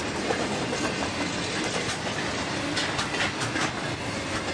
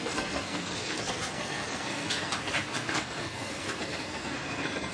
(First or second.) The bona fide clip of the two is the first